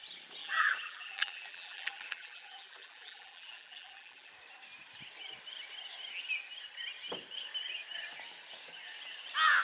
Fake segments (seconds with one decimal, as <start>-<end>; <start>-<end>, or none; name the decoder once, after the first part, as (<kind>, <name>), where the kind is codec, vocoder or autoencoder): 0.4-4.3 (vocoder, BigVGAN v2)